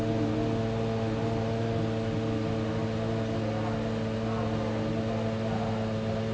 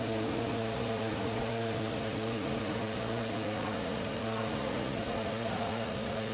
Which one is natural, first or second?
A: first